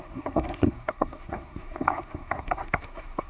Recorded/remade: remade